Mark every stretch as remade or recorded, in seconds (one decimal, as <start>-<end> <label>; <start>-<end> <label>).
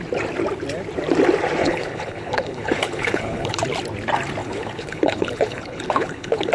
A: 0.0-1.6 recorded; 1.6-3.6 remade; 3.6-4.4 recorded; 4.4-6.5 remade